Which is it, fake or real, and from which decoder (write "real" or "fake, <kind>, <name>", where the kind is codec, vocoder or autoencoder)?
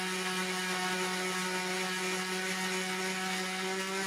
real